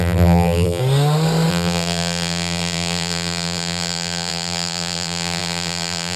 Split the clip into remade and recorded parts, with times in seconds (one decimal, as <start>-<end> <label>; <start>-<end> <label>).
0.0-0.8 remade; 0.8-1.5 recorded; 1.5-6.2 remade